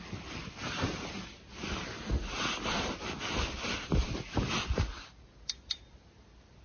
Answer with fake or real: real